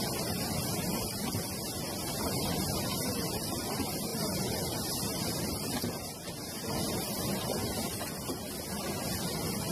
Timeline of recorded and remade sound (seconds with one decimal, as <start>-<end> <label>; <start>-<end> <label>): 0.0-9.7 recorded